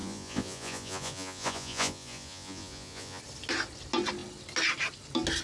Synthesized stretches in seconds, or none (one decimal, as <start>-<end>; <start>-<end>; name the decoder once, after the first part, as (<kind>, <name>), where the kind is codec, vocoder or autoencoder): 0.0-3.2 (vocoder, Vocos)